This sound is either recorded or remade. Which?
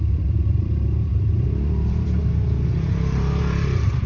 remade